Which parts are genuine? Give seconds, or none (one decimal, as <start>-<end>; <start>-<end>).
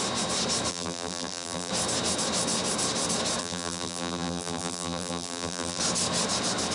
0.0-0.7; 1.7-3.4; 5.8-6.7